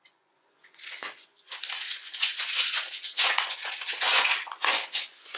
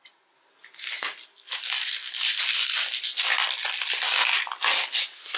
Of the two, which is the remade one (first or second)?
first